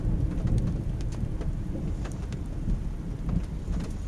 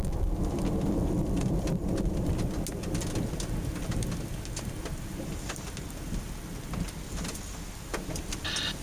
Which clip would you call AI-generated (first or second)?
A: first